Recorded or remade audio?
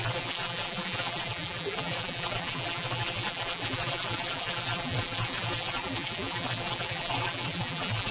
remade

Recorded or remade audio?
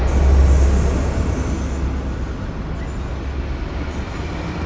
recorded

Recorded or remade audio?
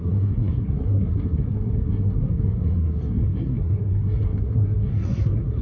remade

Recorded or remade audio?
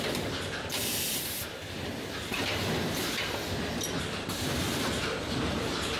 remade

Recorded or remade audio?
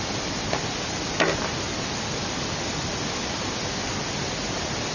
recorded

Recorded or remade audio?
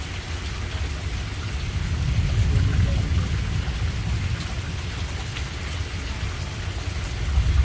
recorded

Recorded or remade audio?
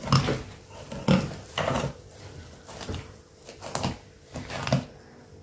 recorded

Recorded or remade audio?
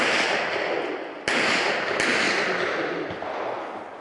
recorded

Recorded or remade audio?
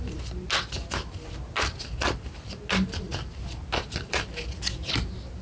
recorded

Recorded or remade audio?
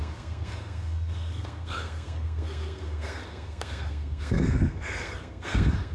remade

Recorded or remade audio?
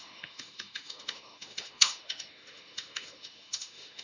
remade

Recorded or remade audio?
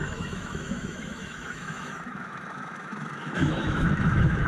remade